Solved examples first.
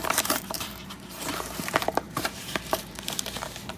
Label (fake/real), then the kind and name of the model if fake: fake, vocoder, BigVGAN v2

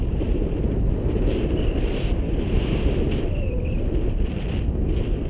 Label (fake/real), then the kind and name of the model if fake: real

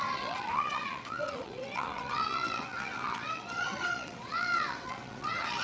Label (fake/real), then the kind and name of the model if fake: fake, vocoder, WaveNeXt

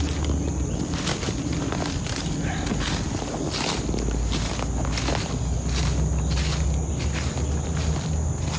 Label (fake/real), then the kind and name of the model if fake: real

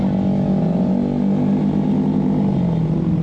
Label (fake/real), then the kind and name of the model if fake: real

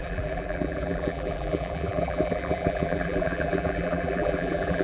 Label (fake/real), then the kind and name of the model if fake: fake, vocoder, BigVGAN v2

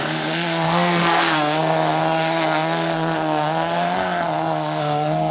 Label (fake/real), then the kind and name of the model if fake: fake, codec, SNAC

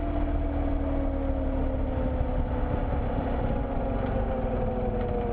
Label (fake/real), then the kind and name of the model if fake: real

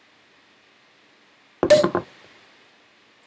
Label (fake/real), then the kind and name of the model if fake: real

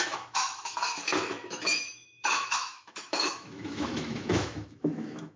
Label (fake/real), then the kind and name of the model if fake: fake, autoencoder, DAC-VAE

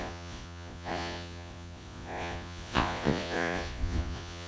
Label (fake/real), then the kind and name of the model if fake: fake, vocoder, Vocos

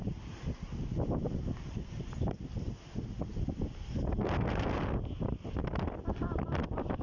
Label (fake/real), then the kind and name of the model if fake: real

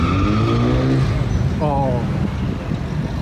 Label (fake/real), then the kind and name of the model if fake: real